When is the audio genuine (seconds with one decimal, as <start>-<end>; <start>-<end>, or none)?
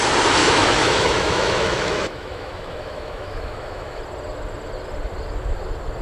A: 0.0-0.4; 4.0-6.0